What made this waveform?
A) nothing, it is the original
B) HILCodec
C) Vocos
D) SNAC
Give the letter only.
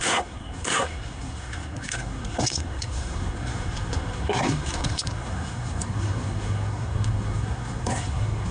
D